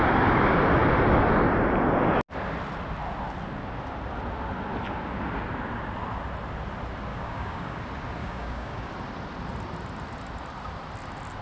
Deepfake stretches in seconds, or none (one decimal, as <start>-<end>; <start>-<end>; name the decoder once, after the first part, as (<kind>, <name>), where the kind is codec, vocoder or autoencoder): 7.1-7.8 (codec, DAC); 8.2-8.9